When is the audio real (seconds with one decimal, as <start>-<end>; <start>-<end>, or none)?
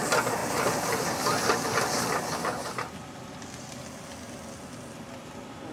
0.0-5.7